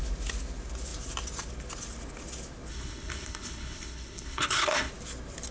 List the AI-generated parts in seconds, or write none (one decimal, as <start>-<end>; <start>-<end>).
2.7-4.9